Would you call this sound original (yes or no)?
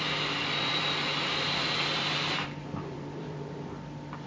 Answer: no